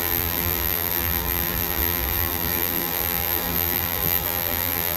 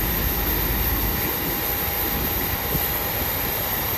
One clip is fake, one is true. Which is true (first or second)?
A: second